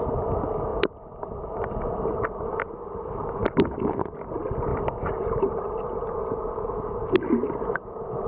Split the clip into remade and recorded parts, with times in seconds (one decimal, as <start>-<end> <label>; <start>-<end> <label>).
0.0-8.3 recorded